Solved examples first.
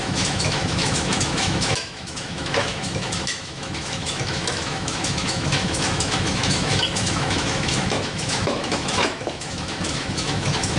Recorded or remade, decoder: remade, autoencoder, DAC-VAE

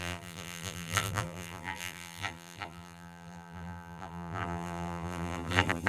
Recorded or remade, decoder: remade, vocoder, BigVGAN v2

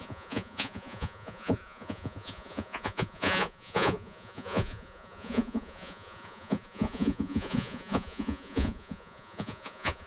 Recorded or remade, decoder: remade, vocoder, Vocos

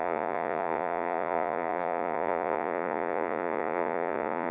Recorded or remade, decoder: remade, vocoder, Vocos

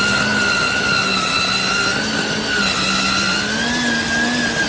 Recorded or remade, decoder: recorded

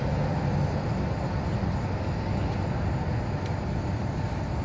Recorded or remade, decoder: recorded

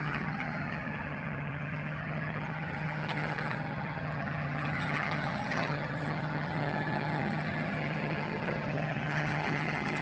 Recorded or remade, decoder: remade, vocoder, HiFi-GAN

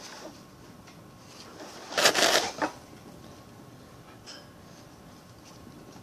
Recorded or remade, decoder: recorded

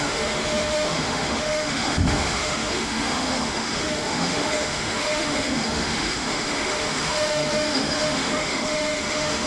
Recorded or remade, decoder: remade, autoencoder, DAC-VAE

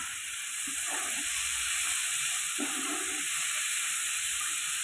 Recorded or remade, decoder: remade, vocoder, BigVGAN v2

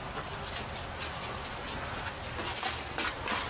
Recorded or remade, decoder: recorded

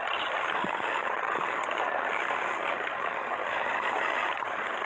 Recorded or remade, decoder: remade, vocoder, HiFi-GAN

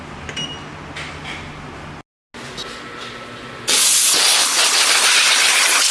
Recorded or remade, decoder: recorded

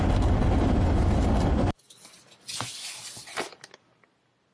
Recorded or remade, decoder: recorded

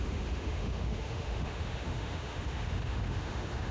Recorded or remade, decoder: remade, autoencoder, DAC-VAE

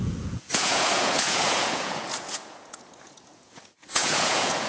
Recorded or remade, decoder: remade, vocoder, Vocos